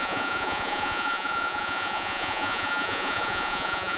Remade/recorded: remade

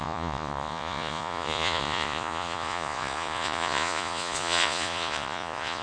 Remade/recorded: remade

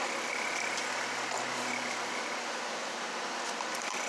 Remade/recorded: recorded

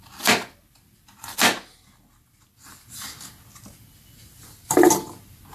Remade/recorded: recorded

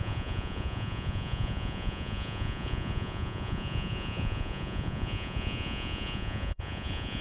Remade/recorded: remade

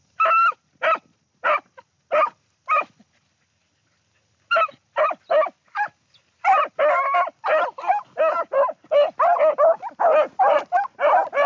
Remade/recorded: recorded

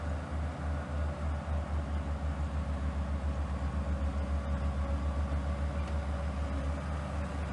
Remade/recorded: recorded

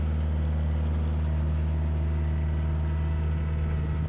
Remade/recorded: recorded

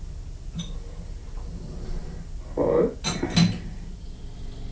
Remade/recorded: recorded